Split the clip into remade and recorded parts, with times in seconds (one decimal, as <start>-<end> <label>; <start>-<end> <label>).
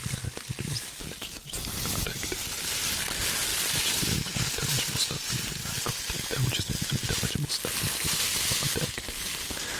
0.0-9.8 recorded